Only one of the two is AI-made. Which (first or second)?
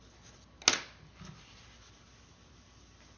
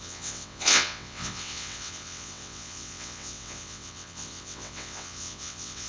second